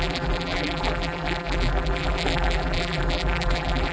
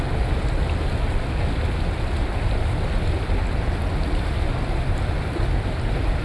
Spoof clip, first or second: first